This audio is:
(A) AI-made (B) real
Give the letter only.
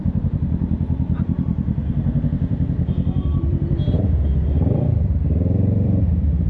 A